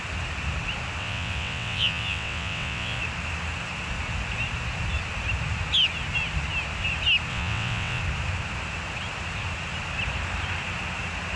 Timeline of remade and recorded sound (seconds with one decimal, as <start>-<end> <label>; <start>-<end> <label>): 0.0-1.0 recorded; 1.0-3.0 remade; 3.0-7.3 recorded; 7.3-8.0 remade; 8.0-11.4 recorded

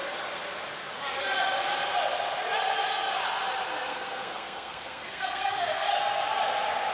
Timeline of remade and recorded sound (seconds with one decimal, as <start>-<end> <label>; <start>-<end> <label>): 0.0-3.9 recorded; 3.9-6.0 remade; 6.0-6.9 recorded

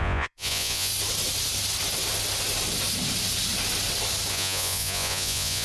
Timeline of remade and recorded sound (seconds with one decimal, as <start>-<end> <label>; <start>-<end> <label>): 0.0-0.9 remade; 0.9-4.3 recorded; 4.3-5.6 remade

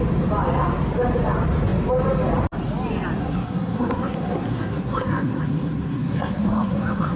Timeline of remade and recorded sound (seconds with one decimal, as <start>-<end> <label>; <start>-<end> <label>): 0.0-3.2 recorded; 3.2-7.2 remade

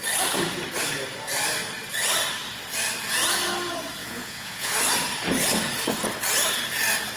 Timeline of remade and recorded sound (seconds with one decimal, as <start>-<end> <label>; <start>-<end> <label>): 0.0-4.0 recorded; 4.0-4.7 remade; 4.7-7.2 recorded

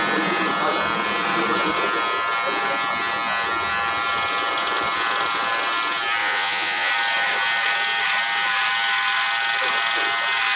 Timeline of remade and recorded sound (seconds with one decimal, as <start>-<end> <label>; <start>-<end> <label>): 0.0-6.2 recorded; 6.2-6.9 remade; 6.9-10.6 recorded

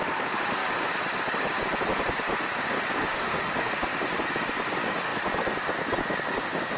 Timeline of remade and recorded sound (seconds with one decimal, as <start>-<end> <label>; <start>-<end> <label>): 0.0-3.0 recorded; 3.0-3.7 remade; 3.7-6.8 recorded

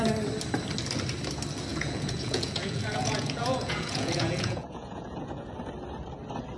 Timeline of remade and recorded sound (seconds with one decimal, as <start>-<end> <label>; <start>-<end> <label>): 0.0-1.7 recorded; 1.7-5.5 remade; 5.5-6.6 recorded